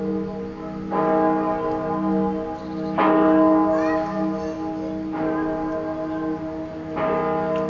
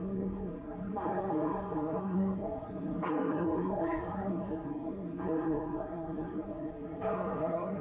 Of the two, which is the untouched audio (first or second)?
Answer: first